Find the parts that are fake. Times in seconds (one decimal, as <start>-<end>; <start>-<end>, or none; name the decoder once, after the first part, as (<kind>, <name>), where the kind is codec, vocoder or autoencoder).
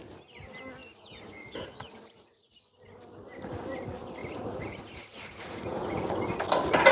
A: 0.8-2.5 (vocoder, Vocos); 4.2-6.0